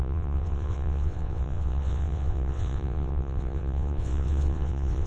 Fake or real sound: fake